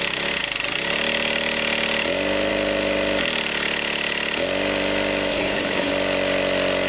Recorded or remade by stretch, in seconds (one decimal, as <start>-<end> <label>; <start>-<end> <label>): 0.0-5.3 recorded; 5.3-5.9 remade; 5.9-6.9 recorded